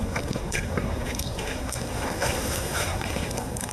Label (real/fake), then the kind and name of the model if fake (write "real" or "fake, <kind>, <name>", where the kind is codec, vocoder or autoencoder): fake, codec, SNAC